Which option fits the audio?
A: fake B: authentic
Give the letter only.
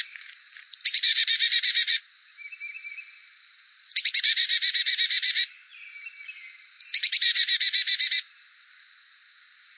A